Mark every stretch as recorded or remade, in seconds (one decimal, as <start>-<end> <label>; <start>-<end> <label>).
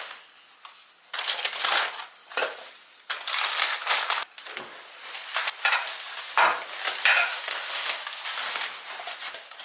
0.0-7.2 recorded; 7.2-8.0 remade; 8.0-9.6 recorded